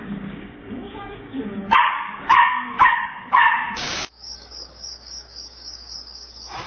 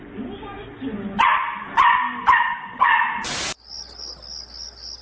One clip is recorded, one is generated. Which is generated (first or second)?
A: first